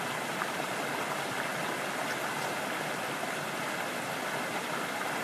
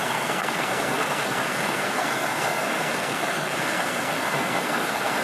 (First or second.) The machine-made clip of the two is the second